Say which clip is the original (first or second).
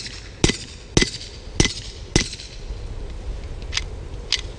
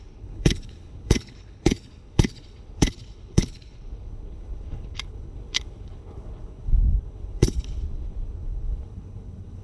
first